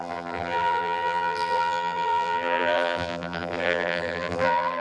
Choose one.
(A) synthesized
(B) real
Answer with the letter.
A